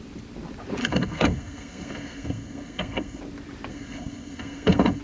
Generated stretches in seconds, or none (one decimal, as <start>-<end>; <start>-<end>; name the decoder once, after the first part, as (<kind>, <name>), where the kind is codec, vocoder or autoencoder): 0.8-3.2 (codec, SNAC); 3.7-5.0